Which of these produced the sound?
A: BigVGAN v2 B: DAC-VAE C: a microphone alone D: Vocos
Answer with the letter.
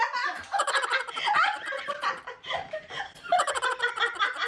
C